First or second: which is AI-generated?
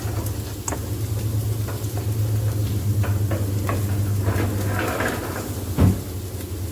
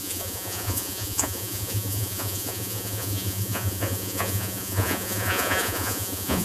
second